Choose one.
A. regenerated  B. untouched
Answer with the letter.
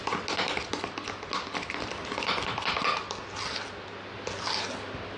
B